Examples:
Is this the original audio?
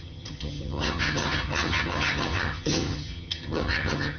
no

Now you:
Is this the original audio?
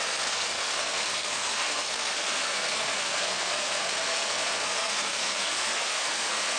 no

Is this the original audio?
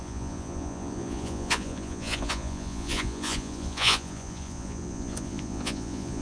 no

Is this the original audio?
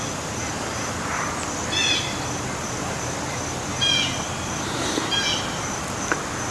yes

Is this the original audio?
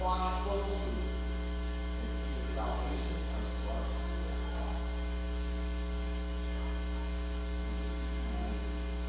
no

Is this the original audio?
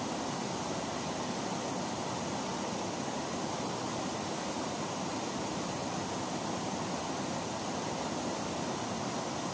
yes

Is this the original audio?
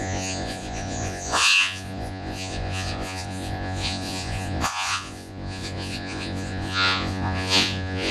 no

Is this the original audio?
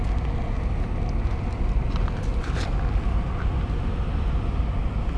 yes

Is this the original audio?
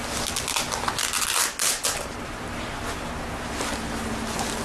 yes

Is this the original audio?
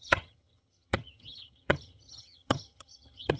no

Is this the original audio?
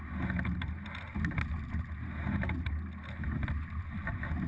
yes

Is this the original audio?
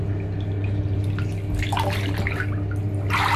yes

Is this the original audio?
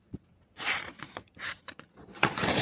no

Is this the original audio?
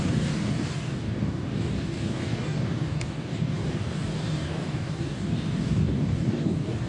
no